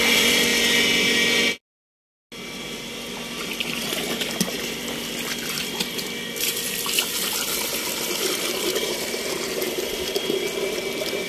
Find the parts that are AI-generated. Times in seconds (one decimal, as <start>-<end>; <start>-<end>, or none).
0.0-0.5; 4.6-11.3